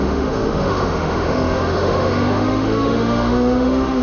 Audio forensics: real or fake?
fake